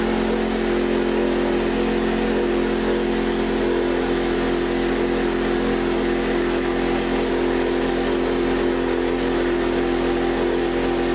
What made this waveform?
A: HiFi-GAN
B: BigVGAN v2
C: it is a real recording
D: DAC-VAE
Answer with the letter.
C